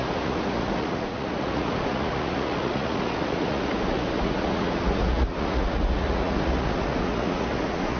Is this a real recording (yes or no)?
no